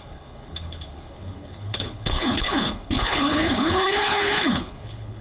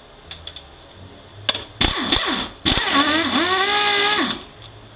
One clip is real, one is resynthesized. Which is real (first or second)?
second